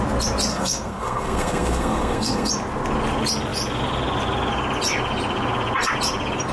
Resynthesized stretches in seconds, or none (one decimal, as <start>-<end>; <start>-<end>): 0.5-2.5